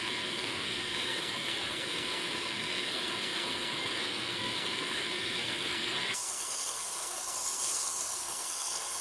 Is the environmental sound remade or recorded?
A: remade